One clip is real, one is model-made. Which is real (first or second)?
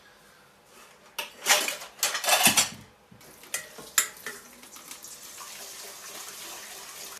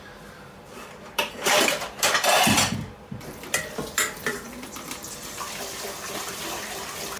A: first